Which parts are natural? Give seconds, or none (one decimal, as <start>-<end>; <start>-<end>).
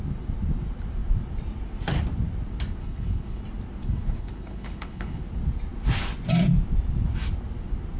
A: 0.0-2.8; 3.4-3.8; 5.2-8.0